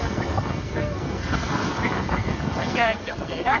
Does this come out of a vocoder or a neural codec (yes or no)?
yes